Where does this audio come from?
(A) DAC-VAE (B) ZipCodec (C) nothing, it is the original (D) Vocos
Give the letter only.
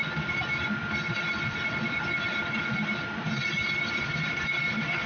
C